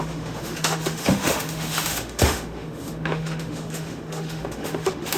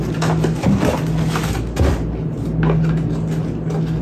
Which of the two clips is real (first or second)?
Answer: second